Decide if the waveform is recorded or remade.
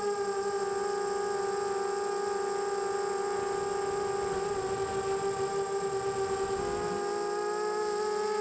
recorded